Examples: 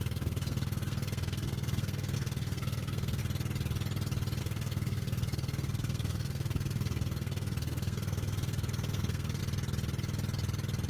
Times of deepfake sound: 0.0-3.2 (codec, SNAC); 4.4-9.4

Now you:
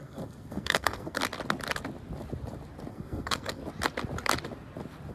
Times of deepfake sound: 0.0-1.2 (codec, SNAC); 2.9-3.6